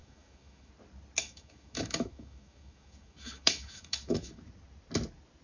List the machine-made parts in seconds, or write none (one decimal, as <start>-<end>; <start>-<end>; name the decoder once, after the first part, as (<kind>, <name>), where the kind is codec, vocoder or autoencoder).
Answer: 0.0-0.7 (autoencoder, DAC-VAE); 1.2-4.4